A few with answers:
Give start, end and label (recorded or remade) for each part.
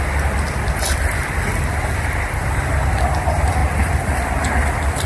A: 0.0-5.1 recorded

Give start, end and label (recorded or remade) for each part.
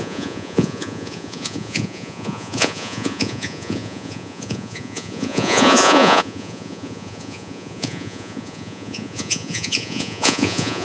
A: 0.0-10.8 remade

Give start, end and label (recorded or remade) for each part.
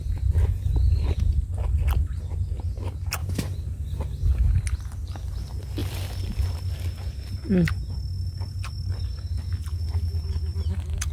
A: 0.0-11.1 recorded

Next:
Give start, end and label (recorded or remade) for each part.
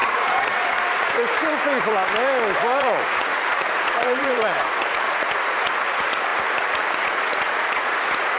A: 0.0-1.9 remade; 1.9-2.8 recorded; 2.8-8.4 remade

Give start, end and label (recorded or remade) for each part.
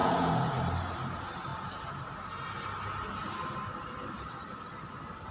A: 0.0-0.5 remade; 0.5-5.3 recorded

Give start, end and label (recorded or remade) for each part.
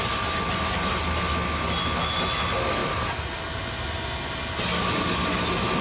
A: 0.0-5.8 recorded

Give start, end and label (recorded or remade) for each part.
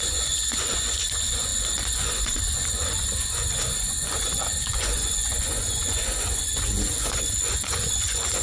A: 0.0-8.4 remade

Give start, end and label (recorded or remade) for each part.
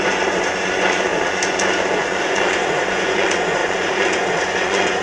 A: 0.0-5.0 remade